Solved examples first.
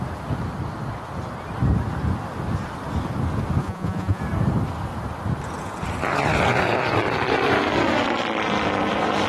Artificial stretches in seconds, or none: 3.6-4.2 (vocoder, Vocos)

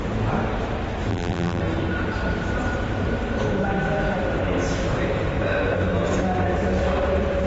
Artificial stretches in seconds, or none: 1.1-1.6 (vocoder, BigVGAN v2)

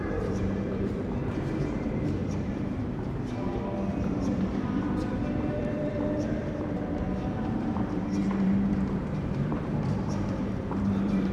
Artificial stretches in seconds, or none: 0.0-11.3 (vocoder, BigVGAN v2)

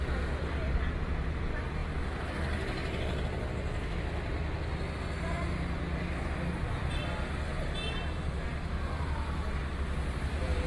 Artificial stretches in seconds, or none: none

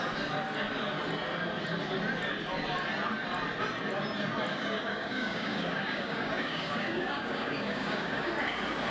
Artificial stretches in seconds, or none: 4.5-8.3 (codec, DAC)